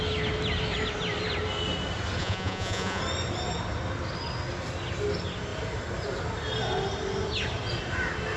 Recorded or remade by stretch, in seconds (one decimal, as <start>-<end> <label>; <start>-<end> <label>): 0.0-2.2 recorded; 2.2-3.0 remade; 3.0-8.4 recorded